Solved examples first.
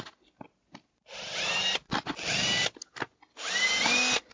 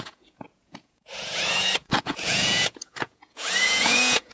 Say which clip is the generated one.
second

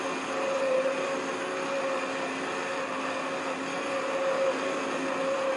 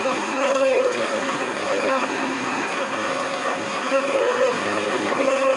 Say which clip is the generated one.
second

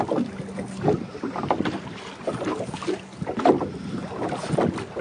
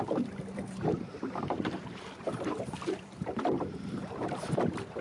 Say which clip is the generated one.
second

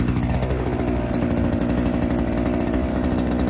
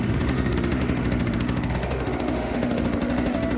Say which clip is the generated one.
second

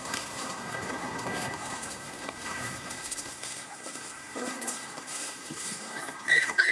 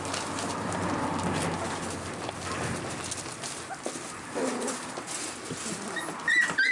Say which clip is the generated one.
first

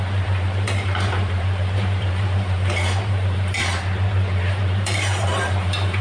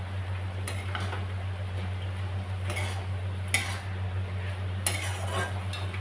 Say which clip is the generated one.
first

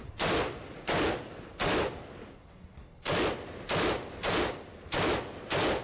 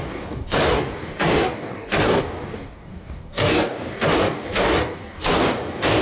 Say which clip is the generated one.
second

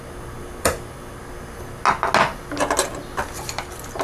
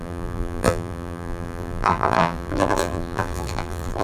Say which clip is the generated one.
second